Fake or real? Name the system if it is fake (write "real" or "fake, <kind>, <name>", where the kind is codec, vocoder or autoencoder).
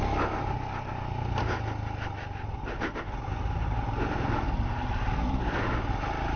real